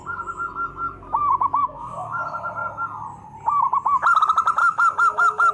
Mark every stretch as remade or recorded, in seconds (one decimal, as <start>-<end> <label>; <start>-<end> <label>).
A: 0.0-1.6 recorded; 1.6-2.2 remade; 2.2-4.6 recorded; 4.6-5.5 remade